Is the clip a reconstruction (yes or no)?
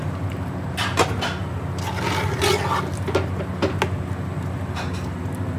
no